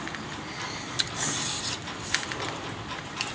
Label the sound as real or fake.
real